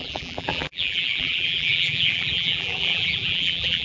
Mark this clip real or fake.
fake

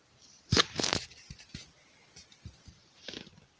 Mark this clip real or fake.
real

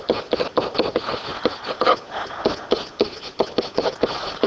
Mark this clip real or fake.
real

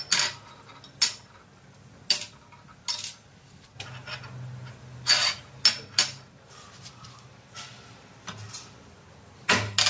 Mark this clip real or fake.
real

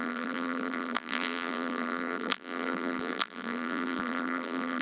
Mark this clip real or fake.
fake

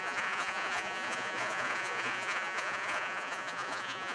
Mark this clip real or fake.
fake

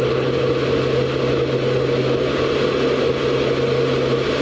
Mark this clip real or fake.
real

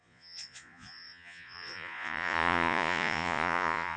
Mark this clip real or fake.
fake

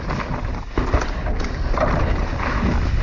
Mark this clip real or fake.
real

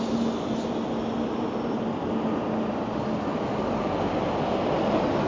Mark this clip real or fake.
real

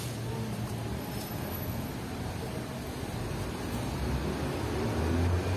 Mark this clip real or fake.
real